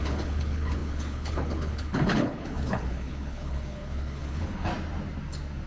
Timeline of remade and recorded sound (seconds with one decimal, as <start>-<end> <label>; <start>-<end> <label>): 0.0-4.7 remade; 4.7-5.7 recorded